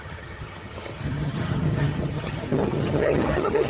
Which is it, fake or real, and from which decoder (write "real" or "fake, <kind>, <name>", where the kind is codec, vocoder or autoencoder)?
fake, vocoder, HiFi-GAN